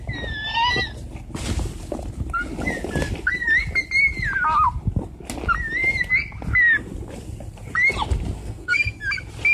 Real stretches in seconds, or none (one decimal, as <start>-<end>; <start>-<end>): 0.0-8.4; 9.0-9.5

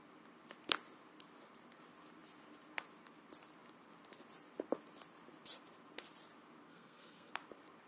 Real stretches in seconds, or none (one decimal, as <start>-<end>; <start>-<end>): 0.0-6.7; 7.3-7.9

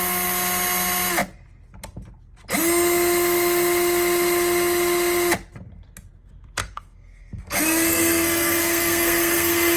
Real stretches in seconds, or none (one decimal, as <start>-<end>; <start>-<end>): 0.0-6.6

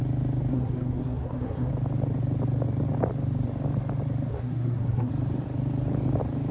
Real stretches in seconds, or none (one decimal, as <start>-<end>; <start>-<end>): 0.0-0.5; 1.7-4.3; 5.1-6.5

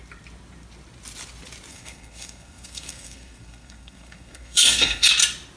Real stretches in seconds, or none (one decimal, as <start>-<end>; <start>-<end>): 0.0-1.7; 5.1-5.6

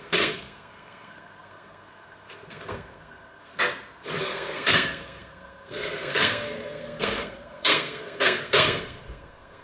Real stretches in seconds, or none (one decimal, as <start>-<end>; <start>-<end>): 3.5-4.2